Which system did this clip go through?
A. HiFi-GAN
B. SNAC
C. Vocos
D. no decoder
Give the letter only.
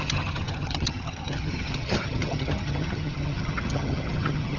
A